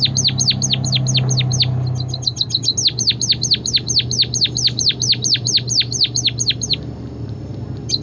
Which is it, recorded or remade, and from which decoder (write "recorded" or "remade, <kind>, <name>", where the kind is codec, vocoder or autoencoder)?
recorded